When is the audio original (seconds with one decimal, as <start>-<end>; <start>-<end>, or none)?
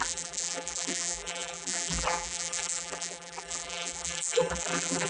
none